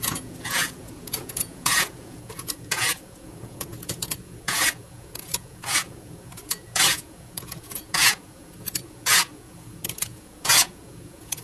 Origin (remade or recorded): remade